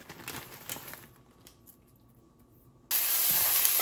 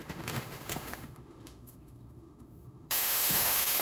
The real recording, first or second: first